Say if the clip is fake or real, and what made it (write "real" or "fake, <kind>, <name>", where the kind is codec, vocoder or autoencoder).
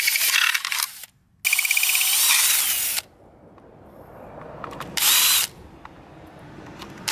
real